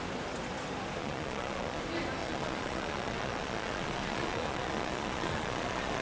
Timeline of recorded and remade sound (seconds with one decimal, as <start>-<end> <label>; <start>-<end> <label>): 0.0-1.0 recorded; 1.0-1.8 remade; 1.8-2.2 recorded; 2.2-6.0 remade